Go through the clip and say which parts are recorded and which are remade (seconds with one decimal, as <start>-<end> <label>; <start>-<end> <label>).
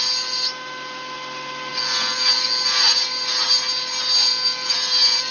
0.0-5.3 recorded